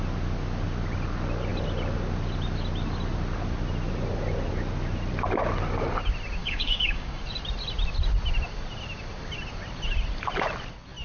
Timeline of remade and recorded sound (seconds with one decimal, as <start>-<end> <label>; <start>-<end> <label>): 0.0-6.4 recorded; 6.4-7.2 remade; 7.2-11.0 recorded